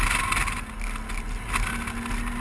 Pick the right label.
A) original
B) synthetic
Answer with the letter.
A